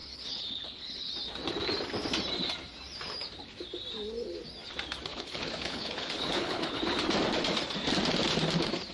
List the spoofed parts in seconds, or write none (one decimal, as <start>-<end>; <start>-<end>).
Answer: 0.0-1.1; 5.1-6.8